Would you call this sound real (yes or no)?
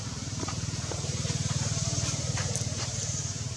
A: no